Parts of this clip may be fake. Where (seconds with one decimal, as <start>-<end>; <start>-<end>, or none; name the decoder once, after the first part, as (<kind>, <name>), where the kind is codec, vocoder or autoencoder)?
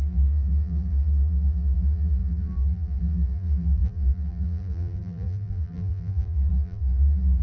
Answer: 0.0-7.4 (vocoder, BigVGAN v2)